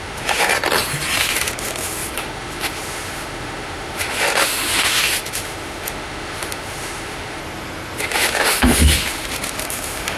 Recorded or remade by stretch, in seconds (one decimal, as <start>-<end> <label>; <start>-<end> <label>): 0.0-0.5 remade; 0.5-1.2 recorded; 1.2-7.4 remade; 7.4-8.0 recorded; 8.0-10.2 remade